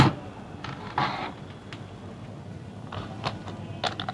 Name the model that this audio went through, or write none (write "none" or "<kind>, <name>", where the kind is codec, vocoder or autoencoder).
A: none